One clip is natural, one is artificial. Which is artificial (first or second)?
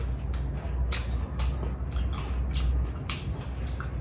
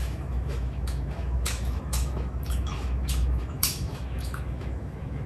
second